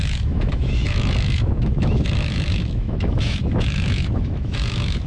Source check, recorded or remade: remade